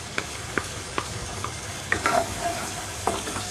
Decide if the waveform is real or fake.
fake